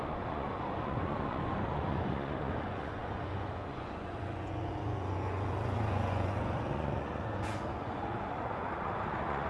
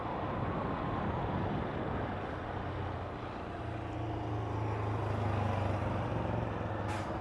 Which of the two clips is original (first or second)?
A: second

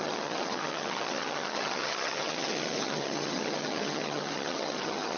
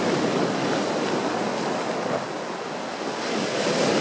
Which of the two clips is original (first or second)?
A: second